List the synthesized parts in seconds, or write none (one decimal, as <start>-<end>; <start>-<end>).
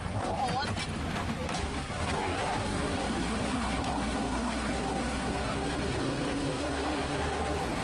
0.0-0.4; 1.6-7.8